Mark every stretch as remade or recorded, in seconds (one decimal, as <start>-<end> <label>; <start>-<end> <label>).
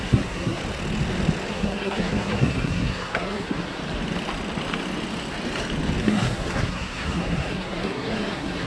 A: 0.0-0.6 remade; 0.6-1.5 recorded; 1.5-3.8 remade; 3.8-6.0 recorded; 6.0-8.7 remade